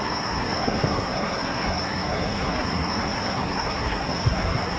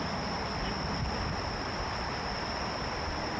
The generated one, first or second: first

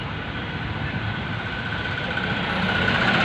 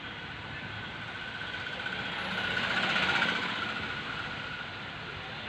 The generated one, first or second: first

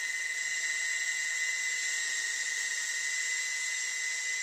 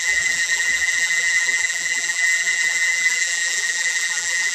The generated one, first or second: second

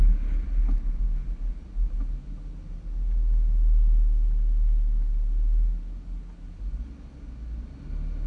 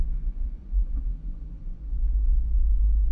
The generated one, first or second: second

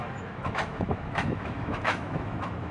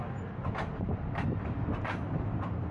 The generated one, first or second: first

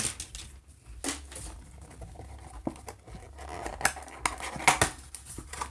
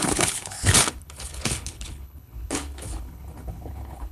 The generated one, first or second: second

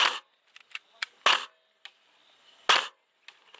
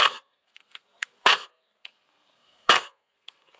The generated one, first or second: second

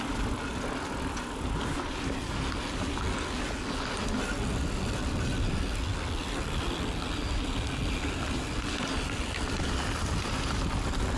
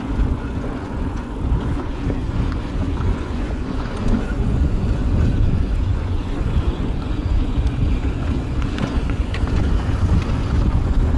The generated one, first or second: second